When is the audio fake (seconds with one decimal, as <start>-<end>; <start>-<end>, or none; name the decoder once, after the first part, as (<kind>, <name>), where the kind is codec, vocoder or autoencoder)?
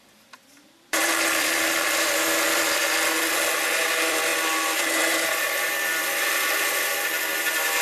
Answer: 0.0-2.8 (vocoder, BigVGAN v2); 3.8-4.3; 4.8-7.8